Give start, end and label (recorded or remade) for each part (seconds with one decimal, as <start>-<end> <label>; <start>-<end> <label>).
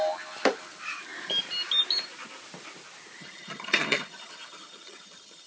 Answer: 0.0-3.2 recorded; 3.2-5.5 remade